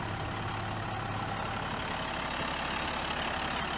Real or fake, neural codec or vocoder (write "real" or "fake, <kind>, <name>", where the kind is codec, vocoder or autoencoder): real